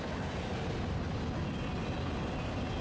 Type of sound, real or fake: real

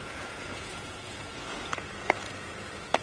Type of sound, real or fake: fake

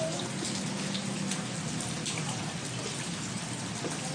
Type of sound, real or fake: real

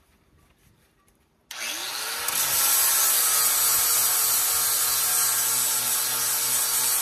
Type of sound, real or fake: real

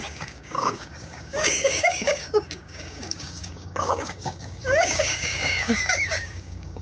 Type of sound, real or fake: fake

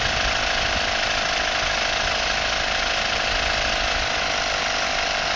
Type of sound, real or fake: real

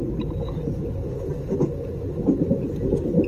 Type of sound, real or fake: real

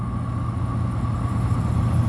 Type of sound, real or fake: real